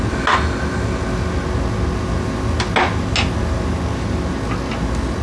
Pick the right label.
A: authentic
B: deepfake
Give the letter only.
A